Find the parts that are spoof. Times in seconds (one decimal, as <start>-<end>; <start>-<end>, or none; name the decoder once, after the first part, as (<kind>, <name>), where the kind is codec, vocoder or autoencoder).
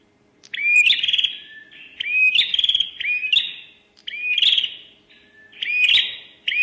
none